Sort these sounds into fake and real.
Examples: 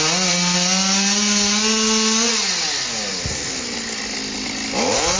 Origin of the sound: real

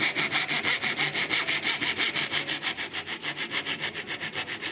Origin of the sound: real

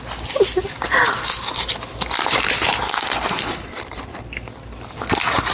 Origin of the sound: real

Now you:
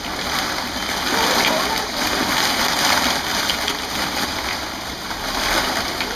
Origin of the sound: real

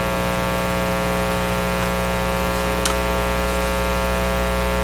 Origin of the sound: real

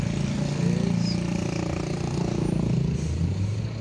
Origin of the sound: real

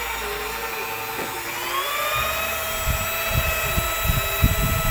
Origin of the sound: real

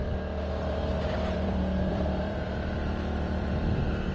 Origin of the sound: fake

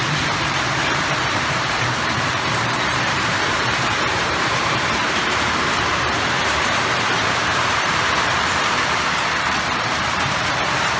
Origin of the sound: fake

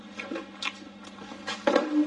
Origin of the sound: real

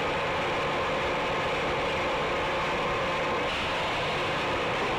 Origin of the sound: real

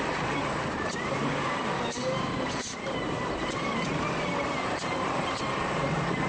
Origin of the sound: fake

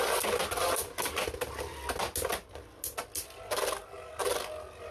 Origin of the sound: real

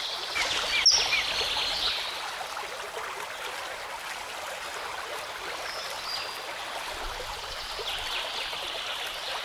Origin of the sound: real